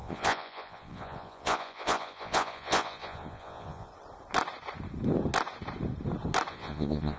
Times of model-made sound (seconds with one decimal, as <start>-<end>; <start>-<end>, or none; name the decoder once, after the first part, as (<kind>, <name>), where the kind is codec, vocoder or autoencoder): 0.0-3.9 (vocoder, Vocos); 6.5-7.2